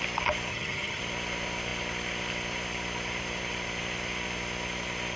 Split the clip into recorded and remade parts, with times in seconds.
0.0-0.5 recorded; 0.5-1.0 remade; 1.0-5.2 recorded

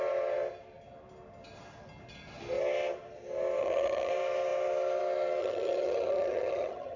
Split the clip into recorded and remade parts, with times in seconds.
0.0-3.6 recorded; 3.6-4.1 remade; 4.1-5.4 recorded; 5.4-7.0 remade

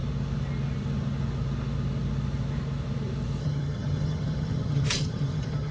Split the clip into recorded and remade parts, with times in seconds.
0.0-3.4 recorded; 3.4-5.7 remade

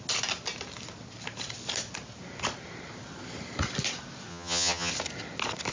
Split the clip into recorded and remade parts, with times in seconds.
0.0-4.3 recorded; 4.3-4.9 remade; 4.9-5.7 recorded

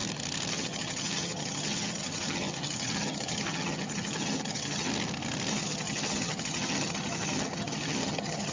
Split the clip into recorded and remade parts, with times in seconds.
0.0-0.5 recorded; 0.5-4.9 remade; 4.9-5.5 recorded; 5.5-8.5 remade

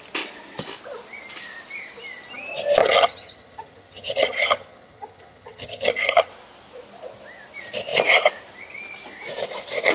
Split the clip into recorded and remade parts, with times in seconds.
0.0-2.8 recorded; 2.8-6.3 remade; 6.3-9.9 recorded

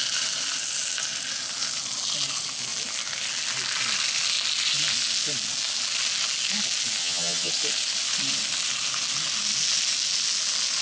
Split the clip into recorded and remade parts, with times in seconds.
0.0-7.0 recorded; 7.0-7.5 remade; 7.5-10.8 recorded

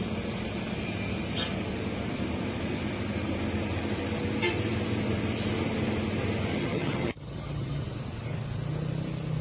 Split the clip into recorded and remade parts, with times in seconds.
0.0-6.5 recorded; 6.5-7.8 remade; 7.8-9.4 recorded